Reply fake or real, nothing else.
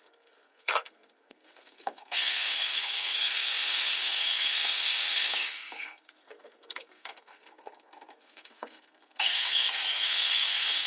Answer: fake